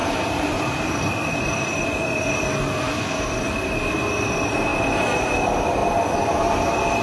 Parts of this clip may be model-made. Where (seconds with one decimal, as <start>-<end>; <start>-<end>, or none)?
0.0-1.7; 4.7-5.3